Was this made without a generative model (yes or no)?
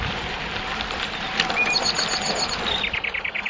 yes